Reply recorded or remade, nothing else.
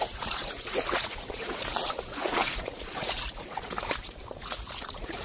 remade